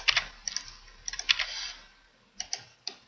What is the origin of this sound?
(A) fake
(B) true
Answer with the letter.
B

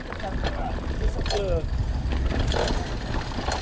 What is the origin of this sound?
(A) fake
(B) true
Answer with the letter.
B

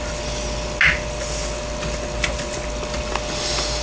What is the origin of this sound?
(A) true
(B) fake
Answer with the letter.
A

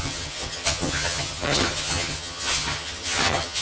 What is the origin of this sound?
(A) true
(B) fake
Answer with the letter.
B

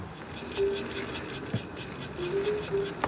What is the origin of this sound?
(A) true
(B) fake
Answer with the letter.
A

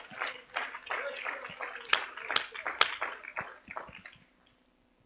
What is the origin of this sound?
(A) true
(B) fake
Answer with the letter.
A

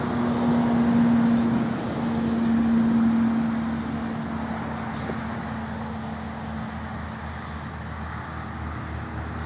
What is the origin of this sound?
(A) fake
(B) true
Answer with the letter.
B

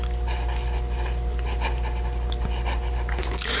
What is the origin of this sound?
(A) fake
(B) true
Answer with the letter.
B